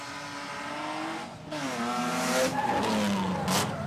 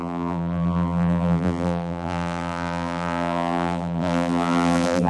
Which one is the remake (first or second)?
second